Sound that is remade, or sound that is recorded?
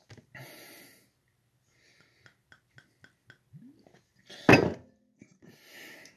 recorded